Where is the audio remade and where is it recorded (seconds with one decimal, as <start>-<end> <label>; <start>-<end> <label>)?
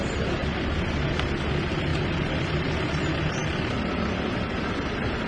0.0-1.9 recorded; 1.9-2.7 remade; 2.7-5.3 recorded